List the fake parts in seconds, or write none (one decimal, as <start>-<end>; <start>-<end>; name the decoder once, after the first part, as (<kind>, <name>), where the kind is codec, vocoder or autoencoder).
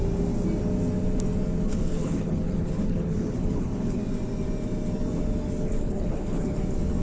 1.7-4.0 (codec, HILCodec); 5.6-6.6